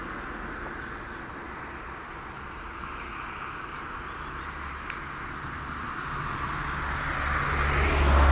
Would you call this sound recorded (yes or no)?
yes